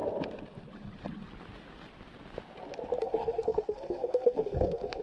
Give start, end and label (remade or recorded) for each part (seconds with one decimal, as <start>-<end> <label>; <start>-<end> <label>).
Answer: 0.0-3.0 recorded; 3.0-5.0 remade